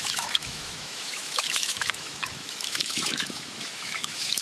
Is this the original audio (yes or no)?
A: no